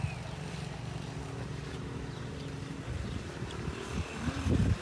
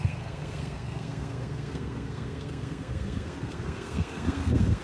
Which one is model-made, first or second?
second